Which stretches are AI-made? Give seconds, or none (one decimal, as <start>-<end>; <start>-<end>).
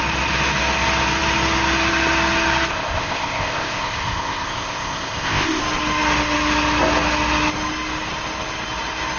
2.7-5.6